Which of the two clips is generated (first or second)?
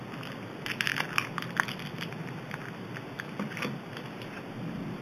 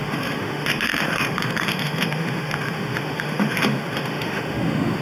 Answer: second